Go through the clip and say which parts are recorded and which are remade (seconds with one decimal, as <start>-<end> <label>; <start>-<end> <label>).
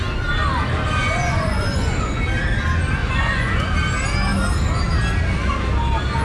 0.0-1.0 recorded; 1.0-2.2 remade; 2.2-3.0 recorded; 3.0-3.7 remade; 3.7-6.2 recorded